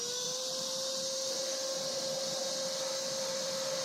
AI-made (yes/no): yes